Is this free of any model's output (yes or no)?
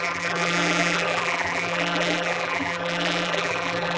no